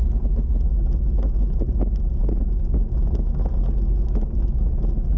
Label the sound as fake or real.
real